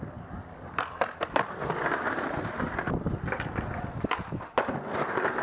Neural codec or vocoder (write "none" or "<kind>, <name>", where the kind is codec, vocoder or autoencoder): vocoder, BigVGAN v2